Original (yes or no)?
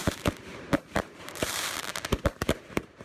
no